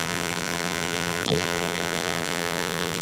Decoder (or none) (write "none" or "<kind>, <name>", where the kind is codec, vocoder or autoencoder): vocoder, BigVGAN v2